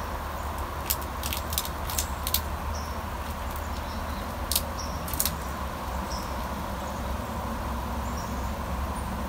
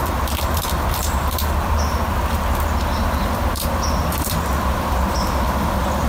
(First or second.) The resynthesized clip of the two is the second